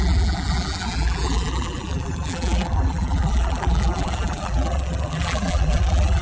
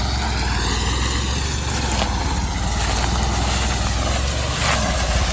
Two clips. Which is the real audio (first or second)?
second